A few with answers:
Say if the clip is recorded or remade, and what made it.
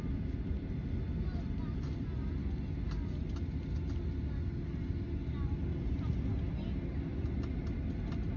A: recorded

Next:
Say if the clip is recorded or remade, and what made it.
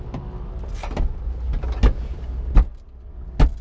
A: recorded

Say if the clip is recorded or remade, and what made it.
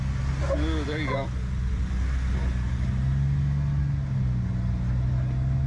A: recorded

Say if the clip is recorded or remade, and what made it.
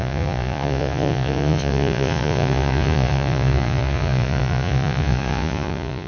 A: remade, vocoder, Vocos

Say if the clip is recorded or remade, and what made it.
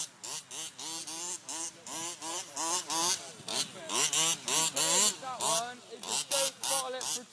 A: recorded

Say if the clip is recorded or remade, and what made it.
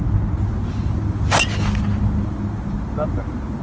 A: recorded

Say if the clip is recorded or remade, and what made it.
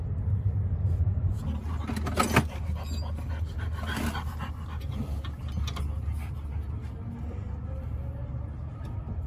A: recorded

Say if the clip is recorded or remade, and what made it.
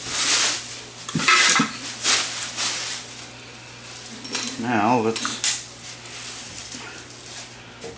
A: recorded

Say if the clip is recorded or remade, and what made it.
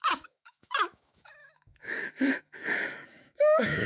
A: remade, autoencoder, DAC-VAE